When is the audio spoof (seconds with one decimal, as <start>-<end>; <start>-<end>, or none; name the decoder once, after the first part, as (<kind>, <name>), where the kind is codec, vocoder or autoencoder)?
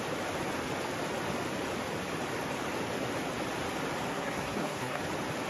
4.1-5.0 (codec, SNAC)